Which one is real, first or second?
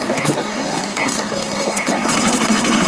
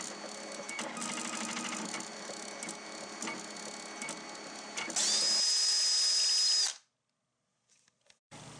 second